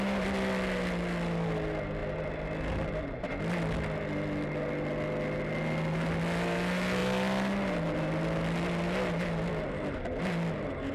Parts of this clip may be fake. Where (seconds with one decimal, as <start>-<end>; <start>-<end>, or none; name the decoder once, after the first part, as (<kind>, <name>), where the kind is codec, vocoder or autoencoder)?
none